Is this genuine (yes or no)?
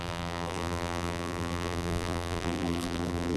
no